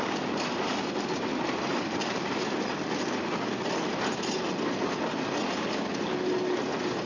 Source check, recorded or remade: recorded